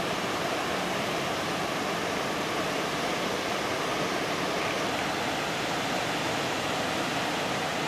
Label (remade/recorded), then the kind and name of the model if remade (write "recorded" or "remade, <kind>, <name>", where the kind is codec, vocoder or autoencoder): recorded